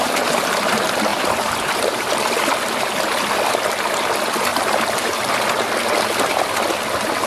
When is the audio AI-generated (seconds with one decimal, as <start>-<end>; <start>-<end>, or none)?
1.1-1.8; 4.5-5.3